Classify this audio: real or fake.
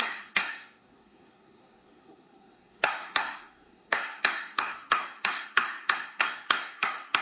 fake